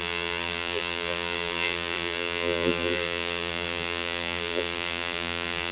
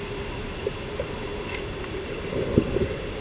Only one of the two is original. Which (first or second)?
second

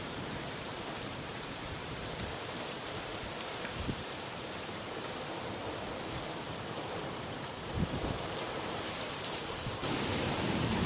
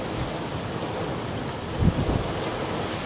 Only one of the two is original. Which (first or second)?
second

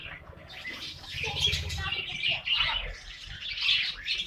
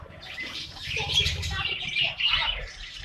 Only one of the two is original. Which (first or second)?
first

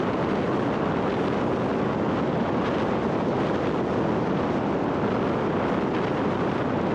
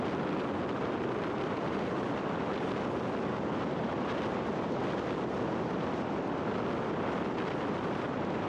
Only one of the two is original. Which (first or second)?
first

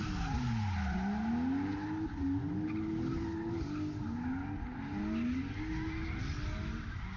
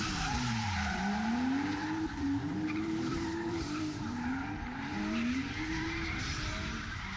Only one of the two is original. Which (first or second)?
first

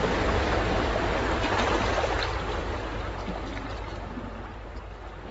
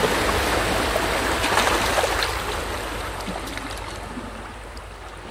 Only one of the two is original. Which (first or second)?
first